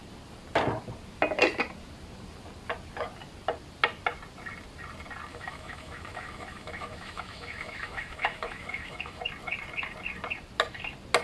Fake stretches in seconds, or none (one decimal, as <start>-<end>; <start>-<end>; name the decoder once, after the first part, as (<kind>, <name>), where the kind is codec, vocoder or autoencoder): 5.3-9.2 (autoencoder, DAC-VAE)